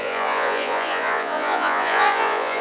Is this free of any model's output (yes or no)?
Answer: no